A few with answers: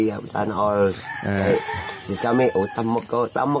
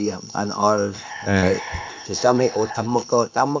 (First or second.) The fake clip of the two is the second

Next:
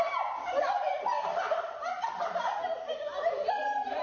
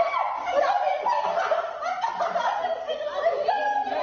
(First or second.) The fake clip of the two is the first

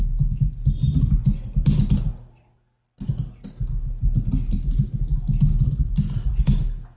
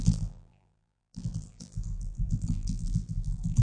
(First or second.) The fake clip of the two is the second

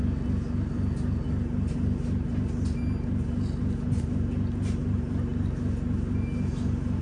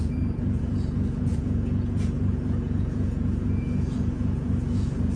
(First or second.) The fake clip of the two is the second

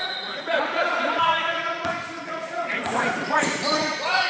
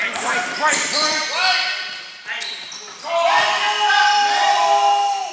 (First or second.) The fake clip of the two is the first